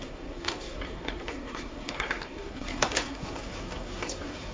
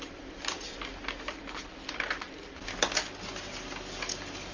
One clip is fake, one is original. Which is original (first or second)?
second